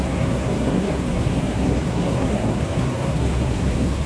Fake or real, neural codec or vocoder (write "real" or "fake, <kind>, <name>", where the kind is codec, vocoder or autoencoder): fake, codec, SNAC